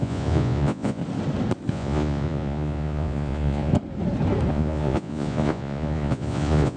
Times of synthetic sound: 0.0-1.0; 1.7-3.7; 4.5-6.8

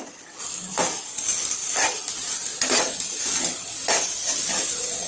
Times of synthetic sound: none